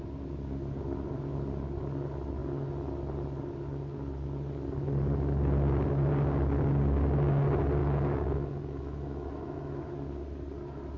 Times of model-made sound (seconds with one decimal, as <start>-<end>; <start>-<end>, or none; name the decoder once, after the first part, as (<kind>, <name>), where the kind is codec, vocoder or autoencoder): 7.8-9.8 (autoencoder, DAC-VAE)